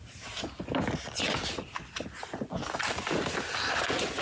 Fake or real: real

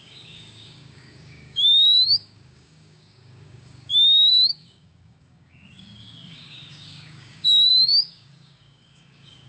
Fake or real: fake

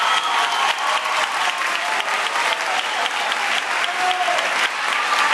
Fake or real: real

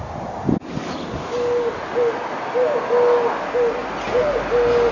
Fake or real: real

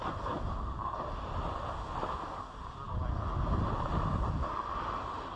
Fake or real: real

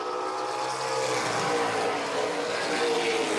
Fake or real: real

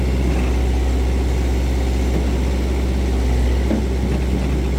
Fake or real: real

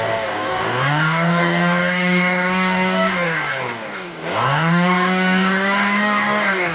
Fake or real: fake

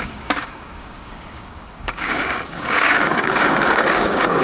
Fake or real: fake